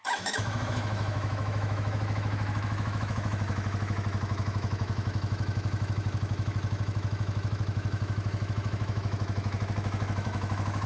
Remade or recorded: remade